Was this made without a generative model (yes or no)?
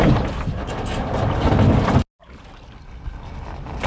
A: yes